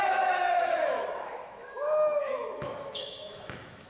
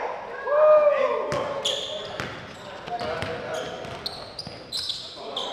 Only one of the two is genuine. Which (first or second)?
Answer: second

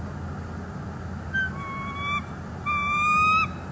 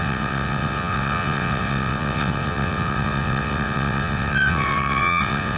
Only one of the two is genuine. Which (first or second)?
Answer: first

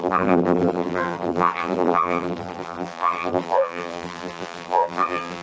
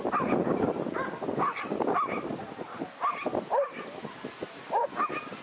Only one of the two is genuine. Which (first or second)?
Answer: second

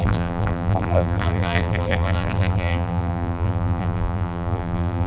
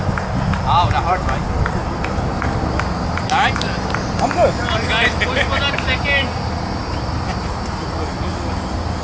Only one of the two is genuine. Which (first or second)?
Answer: second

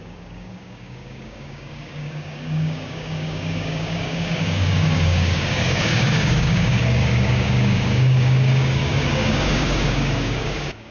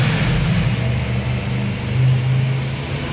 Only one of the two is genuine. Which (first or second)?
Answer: second